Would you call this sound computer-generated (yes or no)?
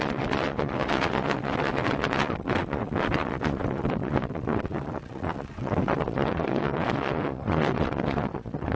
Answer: yes